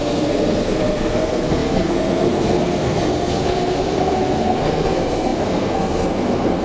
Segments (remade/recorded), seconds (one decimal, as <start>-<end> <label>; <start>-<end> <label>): 0.0-6.6 remade